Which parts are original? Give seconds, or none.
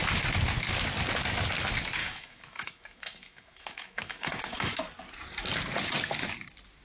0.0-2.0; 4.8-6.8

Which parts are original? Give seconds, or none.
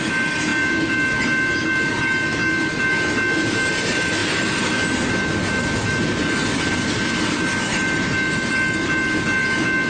0.0-9.9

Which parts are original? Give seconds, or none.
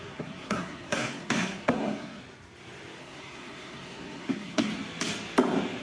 2.2-3.0; 4.7-5.8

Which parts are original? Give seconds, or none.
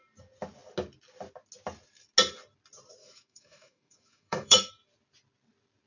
0.0-3.0; 4.7-5.9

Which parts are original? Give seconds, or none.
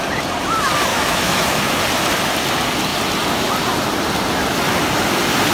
0.0-0.9; 1.7-5.5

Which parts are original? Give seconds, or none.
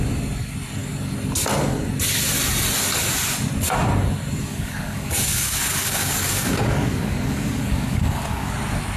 0.0-4.5; 8.5-9.0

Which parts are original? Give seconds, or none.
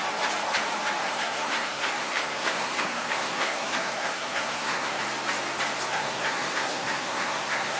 0.0-1.0; 5.0-5.9